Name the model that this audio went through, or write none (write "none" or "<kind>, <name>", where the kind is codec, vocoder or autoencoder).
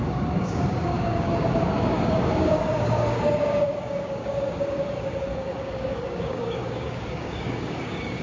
codec, DAC